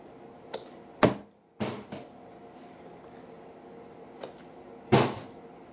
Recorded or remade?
recorded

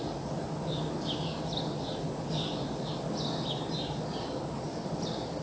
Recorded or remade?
recorded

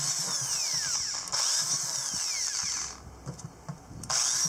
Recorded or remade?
recorded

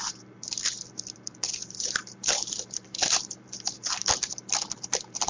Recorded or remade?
remade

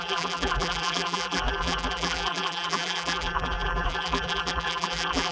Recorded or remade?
remade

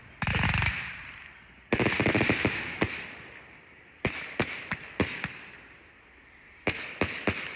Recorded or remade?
remade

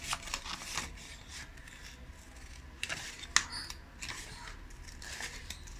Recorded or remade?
recorded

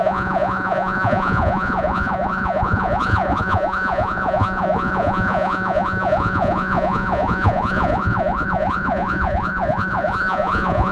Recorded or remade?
remade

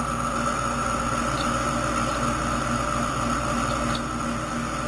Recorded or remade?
recorded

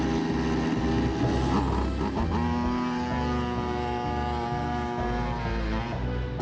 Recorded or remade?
recorded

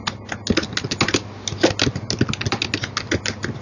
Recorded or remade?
recorded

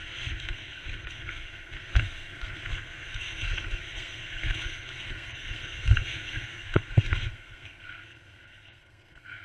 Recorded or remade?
remade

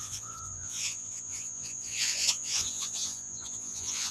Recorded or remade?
remade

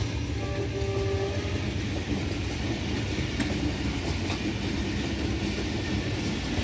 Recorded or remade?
recorded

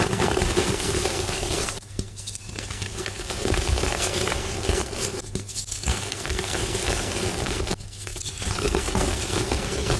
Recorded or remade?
remade